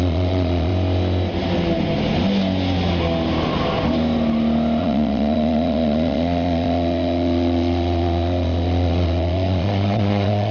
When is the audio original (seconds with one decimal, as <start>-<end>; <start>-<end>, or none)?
0.7-4.8